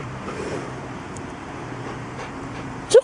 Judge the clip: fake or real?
fake